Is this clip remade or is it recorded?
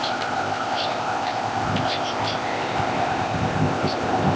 remade